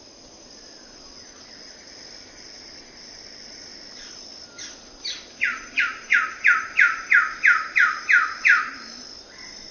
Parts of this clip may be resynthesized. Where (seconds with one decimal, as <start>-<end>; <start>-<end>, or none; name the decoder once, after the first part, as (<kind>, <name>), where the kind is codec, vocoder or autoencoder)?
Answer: none